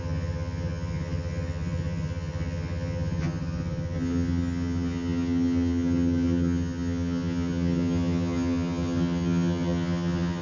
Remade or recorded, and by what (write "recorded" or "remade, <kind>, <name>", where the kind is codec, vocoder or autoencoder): remade, vocoder, HiFi-GAN